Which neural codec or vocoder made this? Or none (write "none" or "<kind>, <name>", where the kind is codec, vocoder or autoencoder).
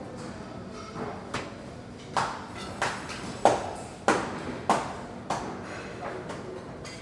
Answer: none